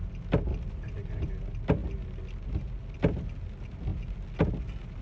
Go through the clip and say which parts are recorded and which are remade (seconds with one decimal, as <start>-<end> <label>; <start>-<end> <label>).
0.0-0.5 recorded; 0.5-1.3 remade; 1.3-5.0 recorded

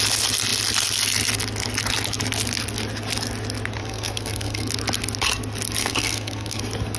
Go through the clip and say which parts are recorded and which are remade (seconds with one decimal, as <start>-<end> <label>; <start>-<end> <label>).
0.0-3.8 recorded; 3.8-4.7 remade; 4.7-5.8 recorded; 5.8-6.6 remade; 6.6-7.0 recorded

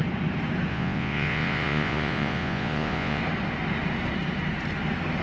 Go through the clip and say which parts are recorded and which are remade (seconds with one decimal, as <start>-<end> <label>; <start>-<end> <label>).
0.0-0.7 recorded; 0.7-3.2 remade; 3.2-5.2 recorded

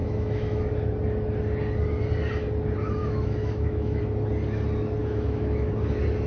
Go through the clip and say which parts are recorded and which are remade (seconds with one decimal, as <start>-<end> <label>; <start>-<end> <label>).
0.0-0.6 remade; 0.6-3.0 recorded; 3.0-4.0 remade; 4.0-5.0 recorded; 5.0-5.7 remade; 5.7-6.3 recorded

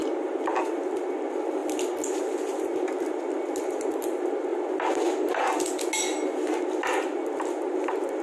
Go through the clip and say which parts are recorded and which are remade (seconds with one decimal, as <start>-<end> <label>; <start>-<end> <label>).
0.0-8.2 recorded